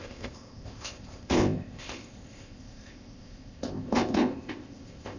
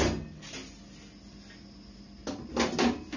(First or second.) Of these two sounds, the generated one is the first